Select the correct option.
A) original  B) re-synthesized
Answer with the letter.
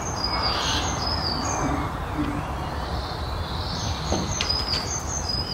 B